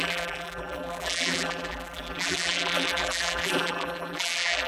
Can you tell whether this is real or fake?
fake